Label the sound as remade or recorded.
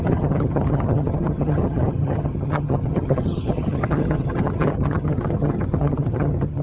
remade